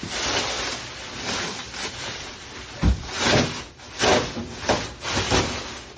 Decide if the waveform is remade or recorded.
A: recorded